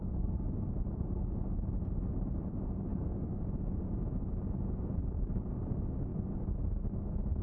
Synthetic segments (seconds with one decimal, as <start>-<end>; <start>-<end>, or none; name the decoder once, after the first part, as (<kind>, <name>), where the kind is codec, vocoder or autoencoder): 0.0-0.5 (codec, DAC); 2.9-3.4